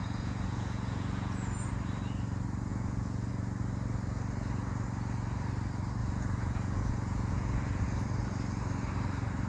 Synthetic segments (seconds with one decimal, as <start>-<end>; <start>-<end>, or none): 0.0-1.7; 2.7-3.3; 6.0-8.0

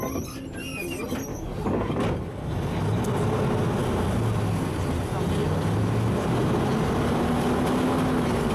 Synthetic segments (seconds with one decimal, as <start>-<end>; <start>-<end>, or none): 1.3-1.9

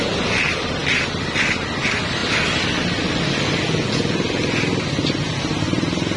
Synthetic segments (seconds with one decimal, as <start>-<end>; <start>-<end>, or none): none

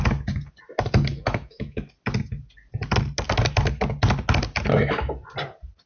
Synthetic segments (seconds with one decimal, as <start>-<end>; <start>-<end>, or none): 1.1-1.9